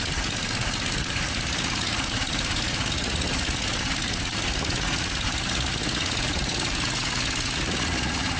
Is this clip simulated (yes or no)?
yes